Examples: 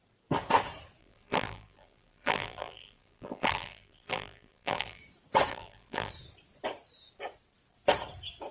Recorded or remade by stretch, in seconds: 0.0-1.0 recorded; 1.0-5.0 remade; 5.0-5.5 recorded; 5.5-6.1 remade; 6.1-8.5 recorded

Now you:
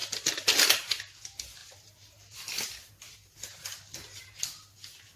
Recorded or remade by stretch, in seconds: 0.0-1.6 recorded; 1.6-2.9 remade; 2.9-5.2 recorded

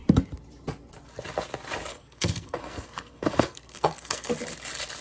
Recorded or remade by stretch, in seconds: 0.0-1.9 recorded; 1.9-4.3 remade; 4.3-5.0 recorded

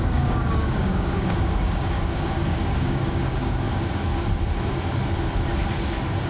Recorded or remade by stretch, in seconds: 0.0-4.1 remade; 4.1-6.3 recorded

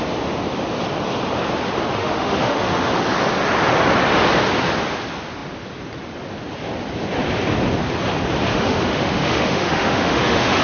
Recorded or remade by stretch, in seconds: 0.0-2.0 recorded; 2.0-2.9 remade; 2.9-8.5 recorded; 8.5-10.6 remade

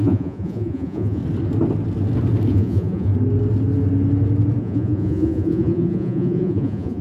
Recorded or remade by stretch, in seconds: 0.0-1.2 remade; 1.2-2.5 recorded; 2.5-3.1 remade; 3.1-4.6 recorded; 4.6-7.0 remade